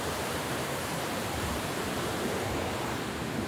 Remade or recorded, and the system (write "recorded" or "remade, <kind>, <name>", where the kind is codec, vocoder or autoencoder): remade, vocoder, BigVGAN v2